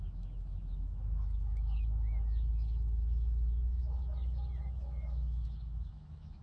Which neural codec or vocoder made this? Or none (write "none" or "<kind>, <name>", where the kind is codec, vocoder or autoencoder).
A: autoencoder, DAC-VAE